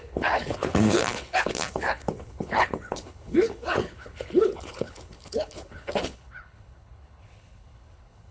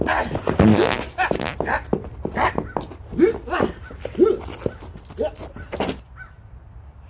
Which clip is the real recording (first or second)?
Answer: second